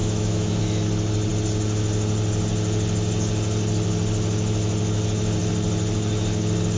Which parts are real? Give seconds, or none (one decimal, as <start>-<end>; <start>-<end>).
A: 0.6-6.8